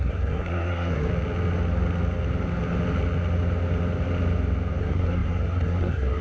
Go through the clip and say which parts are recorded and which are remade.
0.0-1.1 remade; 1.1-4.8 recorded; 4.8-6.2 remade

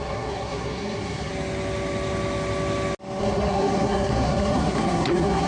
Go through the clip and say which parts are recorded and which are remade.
0.0-1.3 remade; 1.3-3.2 recorded; 3.2-5.5 remade